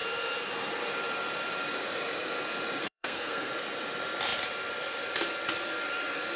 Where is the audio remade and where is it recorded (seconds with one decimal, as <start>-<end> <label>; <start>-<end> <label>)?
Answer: 0.0-2.8 recorded; 2.8-3.5 remade; 3.5-6.4 recorded